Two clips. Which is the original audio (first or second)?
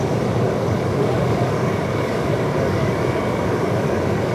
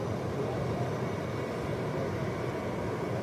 second